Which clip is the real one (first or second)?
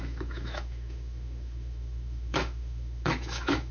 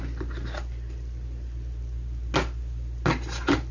second